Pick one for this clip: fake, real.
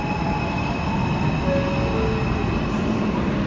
real